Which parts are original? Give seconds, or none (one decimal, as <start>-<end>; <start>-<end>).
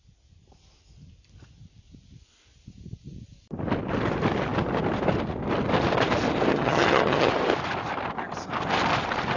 0.0-6.5; 7.3-9.4